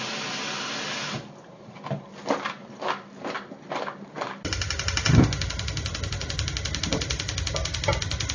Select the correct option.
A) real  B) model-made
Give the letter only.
A